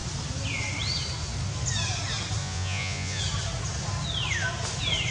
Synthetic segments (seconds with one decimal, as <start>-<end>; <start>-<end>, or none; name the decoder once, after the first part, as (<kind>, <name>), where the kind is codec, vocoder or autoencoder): 2.4-3.2 (vocoder, Vocos)

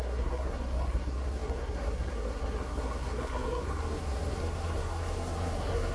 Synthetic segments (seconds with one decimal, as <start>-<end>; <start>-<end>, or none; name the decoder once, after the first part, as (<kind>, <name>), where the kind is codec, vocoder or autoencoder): 0.0-5.9 (codec, SNAC)

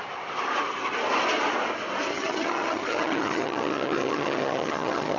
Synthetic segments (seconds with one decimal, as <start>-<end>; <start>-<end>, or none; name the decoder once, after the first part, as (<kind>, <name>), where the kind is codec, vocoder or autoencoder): 2.1-5.2 (vocoder, HiFi-GAN)